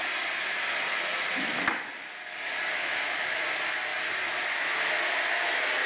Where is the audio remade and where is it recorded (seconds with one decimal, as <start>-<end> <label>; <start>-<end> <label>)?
0.0-2.7 recorded; 2.7-3.3 remade; 3.3-5.9 recorded